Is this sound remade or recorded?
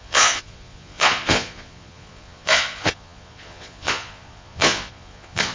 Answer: remade